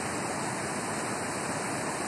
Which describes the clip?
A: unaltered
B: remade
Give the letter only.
A